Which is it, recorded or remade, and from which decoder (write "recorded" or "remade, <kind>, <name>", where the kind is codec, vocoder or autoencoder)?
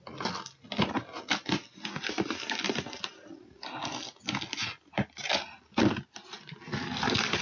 recorded